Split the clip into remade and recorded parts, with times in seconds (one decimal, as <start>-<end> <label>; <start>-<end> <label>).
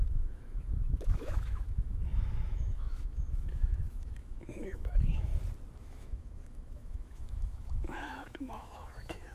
0.0-5.3 remade; 5.3-5.8 recorded; 5.8-9.3 remade